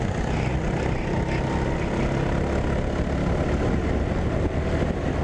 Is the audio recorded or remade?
recorded